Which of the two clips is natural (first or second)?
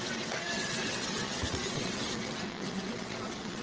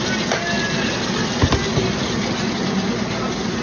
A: second